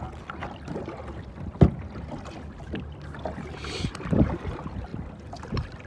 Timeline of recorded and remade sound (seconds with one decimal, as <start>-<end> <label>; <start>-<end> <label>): 0.0-0.4 remade; 0.4-3.9 recorded; 3.9-4.9 remade; 4.9-5.9 recorded